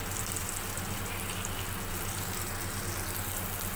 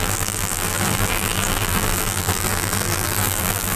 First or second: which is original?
first